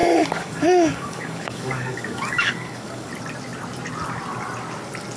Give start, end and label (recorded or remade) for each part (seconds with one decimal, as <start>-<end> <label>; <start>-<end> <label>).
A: 0.0-3.1 remade; 3.1-5.2 recorded